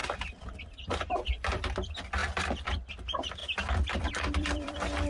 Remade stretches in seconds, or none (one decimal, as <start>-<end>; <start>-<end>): 0.0-2.2; 2.9-5.1